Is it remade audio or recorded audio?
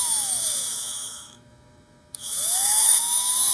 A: remade